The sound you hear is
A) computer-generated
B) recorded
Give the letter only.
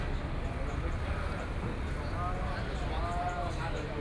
B